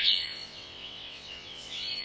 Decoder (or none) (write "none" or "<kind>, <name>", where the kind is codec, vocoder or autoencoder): vocoder, WaveNeXt